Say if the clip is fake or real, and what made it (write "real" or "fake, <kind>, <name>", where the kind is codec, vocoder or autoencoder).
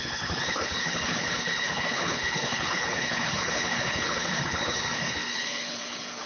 fake, codec, HILCodec